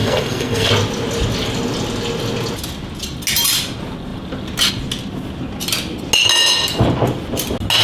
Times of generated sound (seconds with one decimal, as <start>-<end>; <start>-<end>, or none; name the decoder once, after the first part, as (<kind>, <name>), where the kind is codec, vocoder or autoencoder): 0.0-0.7 (codec, SNAC)